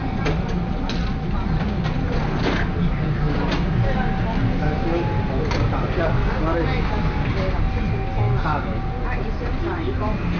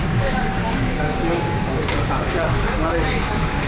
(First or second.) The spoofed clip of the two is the second